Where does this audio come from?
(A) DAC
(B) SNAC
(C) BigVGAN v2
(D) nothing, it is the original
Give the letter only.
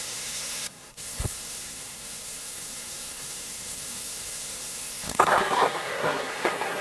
B